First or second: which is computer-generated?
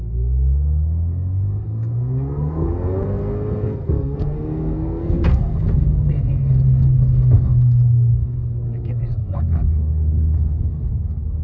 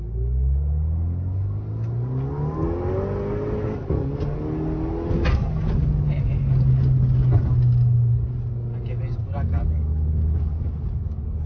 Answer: first